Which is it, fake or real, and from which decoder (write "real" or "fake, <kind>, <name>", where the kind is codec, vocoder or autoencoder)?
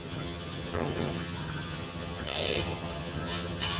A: fake, vocoder, HiFi-GAN